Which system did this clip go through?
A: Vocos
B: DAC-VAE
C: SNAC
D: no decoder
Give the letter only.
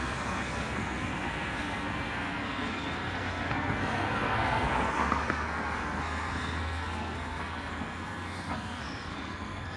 C